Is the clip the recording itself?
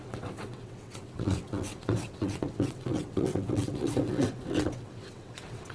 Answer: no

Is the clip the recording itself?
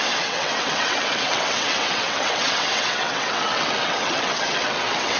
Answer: no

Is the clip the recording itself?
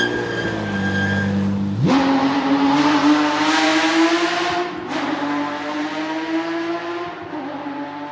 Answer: yes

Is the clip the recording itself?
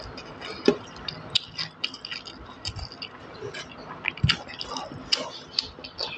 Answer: yes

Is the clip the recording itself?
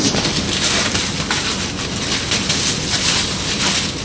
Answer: yes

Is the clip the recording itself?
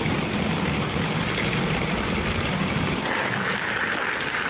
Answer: yes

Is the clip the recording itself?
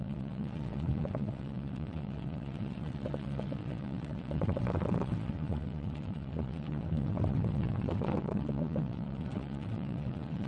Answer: no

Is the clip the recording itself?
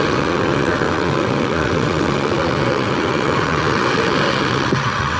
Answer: no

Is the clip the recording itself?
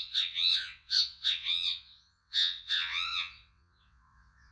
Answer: no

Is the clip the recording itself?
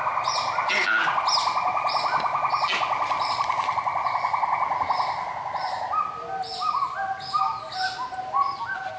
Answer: yes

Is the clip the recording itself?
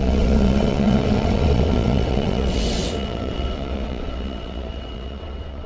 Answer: no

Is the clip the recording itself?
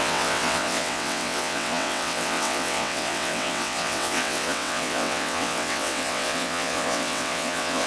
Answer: no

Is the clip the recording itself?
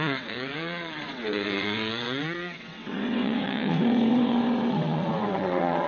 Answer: no